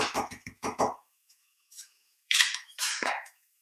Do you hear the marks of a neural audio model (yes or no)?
yes